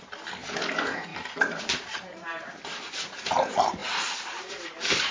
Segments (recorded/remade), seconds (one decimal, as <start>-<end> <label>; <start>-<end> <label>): 0.0-5.1 recorded